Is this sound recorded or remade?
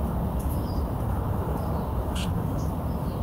recorded